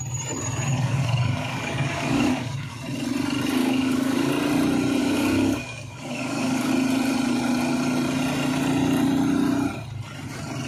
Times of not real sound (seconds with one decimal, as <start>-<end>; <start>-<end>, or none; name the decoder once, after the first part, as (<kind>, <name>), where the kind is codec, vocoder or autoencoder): 0.7-2.8 (codec, DAC); 3.6-4.3; 5.0-6.7